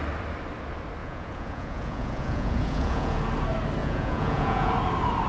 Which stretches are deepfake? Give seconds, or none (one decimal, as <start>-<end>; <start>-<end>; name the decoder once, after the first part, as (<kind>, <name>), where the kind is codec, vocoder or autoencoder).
1.0-3.2 (vocoder, Vocos); 3.8-4.7